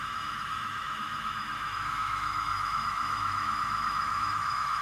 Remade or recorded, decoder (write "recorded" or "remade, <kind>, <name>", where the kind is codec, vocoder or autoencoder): remade, autoencoder, DAC-VAE